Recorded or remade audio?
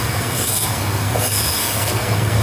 remade